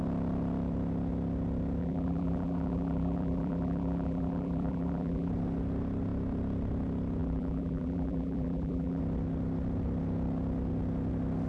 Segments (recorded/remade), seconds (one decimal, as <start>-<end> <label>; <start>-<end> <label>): 0.0-1.8 recorded; 1.8-5.3 remade; 5.3-7.2 recorded; 7.2-9.0 remade; 9.0-11.5 recorded